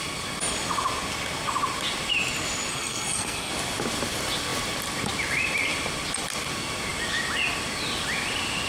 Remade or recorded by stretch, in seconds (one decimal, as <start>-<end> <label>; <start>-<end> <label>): 0.0-2.7 recorded; 2.7-3.5 remade; 3.5-8.7 recorded